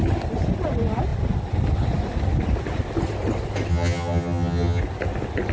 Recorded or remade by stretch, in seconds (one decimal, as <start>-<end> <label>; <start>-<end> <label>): 0.0-3.7 recorded; 3.7-4.8 remade; 4.8-5.5 recorded